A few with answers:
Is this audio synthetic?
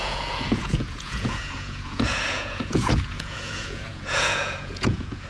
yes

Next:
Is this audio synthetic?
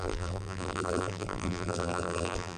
yes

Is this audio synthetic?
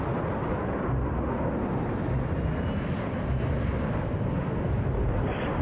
no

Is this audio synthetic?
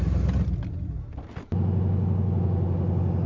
no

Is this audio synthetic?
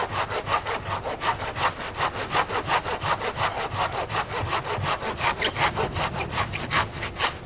no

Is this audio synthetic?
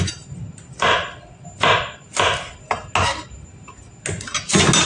no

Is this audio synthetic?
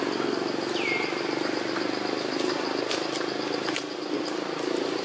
no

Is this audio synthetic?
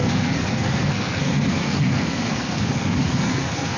yes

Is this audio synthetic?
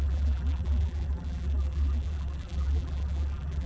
yes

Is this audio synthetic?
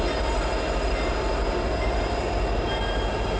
no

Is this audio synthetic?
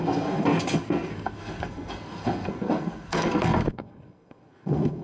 yes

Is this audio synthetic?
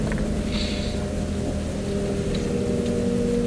no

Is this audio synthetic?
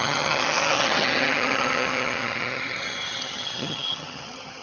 yes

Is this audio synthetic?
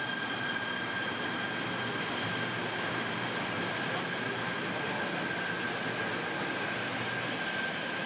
no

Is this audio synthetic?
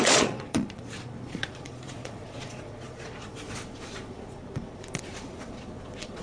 yes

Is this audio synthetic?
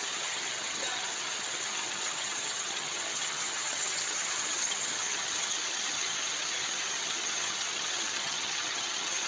yes